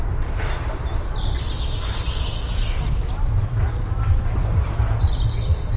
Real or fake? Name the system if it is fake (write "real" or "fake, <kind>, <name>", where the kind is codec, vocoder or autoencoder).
real